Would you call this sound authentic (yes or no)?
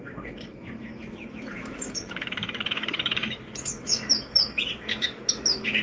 no